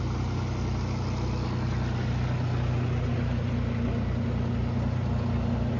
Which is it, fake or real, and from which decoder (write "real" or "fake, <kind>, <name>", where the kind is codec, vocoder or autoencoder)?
real